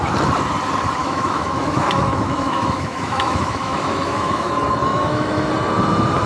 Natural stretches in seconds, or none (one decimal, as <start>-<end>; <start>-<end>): 0.0-1.0; 4.5-4.9; 5.5-6.3